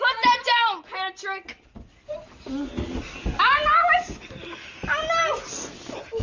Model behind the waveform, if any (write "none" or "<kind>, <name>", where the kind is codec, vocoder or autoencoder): none